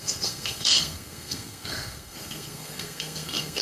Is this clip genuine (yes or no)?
no